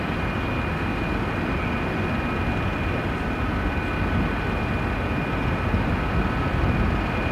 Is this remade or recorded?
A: recorded